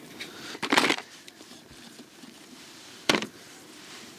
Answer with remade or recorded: remade